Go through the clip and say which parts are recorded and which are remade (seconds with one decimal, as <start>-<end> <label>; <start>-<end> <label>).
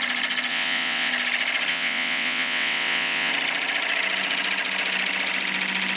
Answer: 0.0-0.5 recorded; 0.5-1.1 remade; 1.1-1.7 recorded; 1.7-3.3 remade; 3.3-6.0 recorded